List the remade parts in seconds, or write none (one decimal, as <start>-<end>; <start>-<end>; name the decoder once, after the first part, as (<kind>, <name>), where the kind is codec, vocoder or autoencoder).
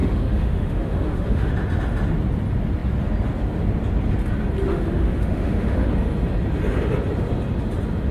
0.0-1.5 (autoencoder, DAC-VAE); 4.7-5.9